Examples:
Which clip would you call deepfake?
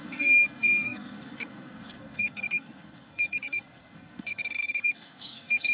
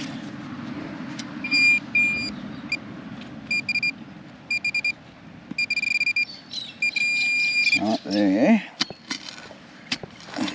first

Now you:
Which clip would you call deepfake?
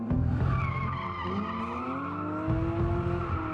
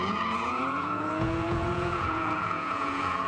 second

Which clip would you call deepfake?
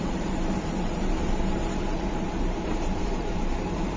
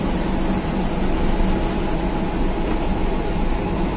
first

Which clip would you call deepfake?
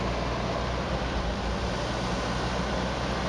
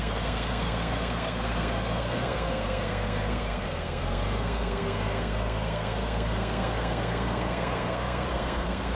second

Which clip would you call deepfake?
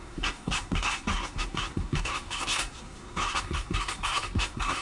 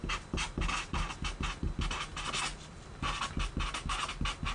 first